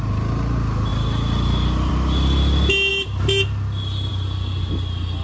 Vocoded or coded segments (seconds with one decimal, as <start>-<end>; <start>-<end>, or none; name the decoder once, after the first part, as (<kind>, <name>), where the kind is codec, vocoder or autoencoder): none